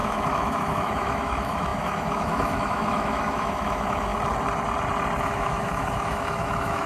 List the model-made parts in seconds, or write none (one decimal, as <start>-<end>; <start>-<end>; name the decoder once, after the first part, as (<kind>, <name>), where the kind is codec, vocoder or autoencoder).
0.0-4.1 (autoencoder, DAC-VAE); 5.2-6.9